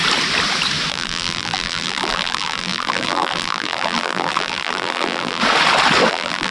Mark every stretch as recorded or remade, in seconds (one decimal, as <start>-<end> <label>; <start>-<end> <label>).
0.0-0.9 recorded; 0.9-5.4 remade; 5.4-6.1 recorded; 6.1-6.5 remade